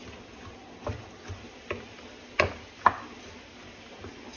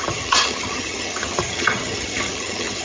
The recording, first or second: first